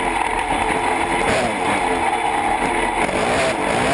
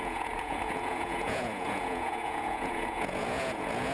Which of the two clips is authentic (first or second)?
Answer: first